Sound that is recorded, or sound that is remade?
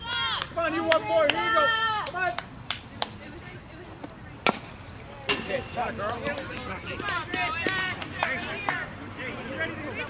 remade